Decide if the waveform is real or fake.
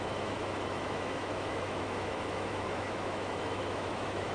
fake